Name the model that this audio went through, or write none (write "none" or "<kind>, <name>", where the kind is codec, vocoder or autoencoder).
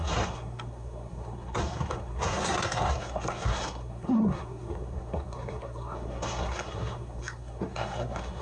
codec, SNAC